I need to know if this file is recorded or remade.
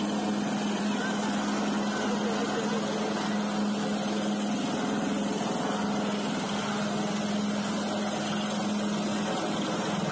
recorded